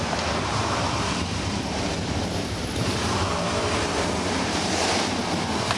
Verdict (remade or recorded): remade